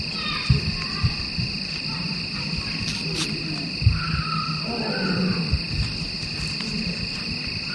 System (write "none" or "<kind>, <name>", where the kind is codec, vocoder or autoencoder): none